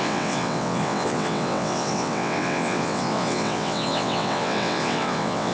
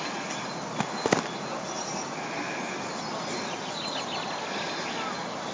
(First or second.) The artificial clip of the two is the first